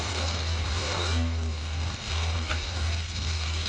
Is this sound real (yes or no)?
no